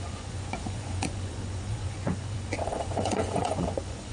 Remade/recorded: remade